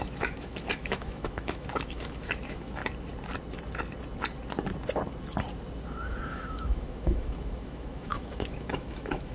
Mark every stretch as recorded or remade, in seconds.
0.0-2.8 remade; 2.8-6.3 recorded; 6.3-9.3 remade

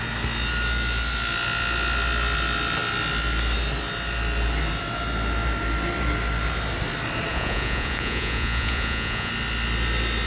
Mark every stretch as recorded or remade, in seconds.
0.0-7.3 recorded; 7.3-9.3 remade; 9.3-10.3 recorded

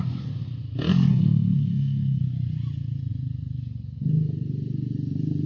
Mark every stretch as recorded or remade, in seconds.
0.0-1.1 recorded; 1.1-2.2 remade; 2.2-5.5 recorded

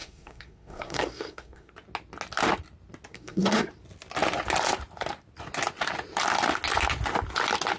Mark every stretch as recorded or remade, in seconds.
0.0-1.7 remade; 1.7-3.1 recorded; 3.1-3.7 remade; 3.7-7.8 recorded

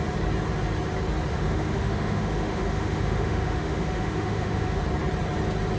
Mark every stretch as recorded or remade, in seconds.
0.0-1.3 recorded; 1.3-4.8 remade; 4.8-5.8 recorded

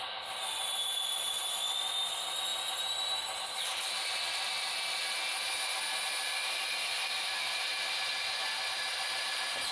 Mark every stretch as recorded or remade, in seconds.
0.0-9.7 recorded